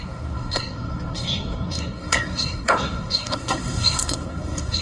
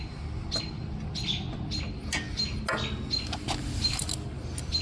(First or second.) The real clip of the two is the second